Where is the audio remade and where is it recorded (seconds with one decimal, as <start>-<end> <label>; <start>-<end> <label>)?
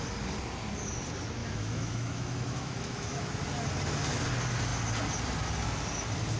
0.0-1.4 recorded; 1.4-3.3 remade; 3.3-6.4 recorded